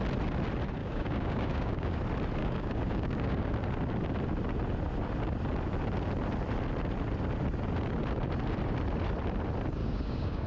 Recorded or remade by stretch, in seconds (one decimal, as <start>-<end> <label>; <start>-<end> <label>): 0.0-0.8 recorded; 0.8-2.0 remade; 2.0-2.4 recorded; 2.4-3.5 remade; 3.5-9.8 recorded; 9.8-10.5 remade